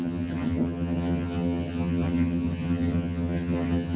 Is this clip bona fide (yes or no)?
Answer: no